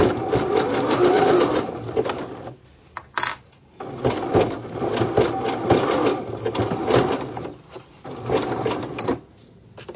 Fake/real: real